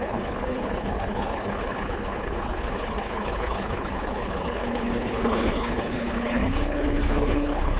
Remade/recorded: remade